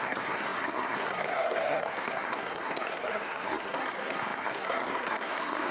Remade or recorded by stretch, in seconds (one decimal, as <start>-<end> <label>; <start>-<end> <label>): 0.0-5.7 remade